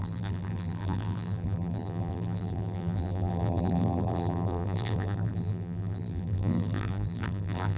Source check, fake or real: fake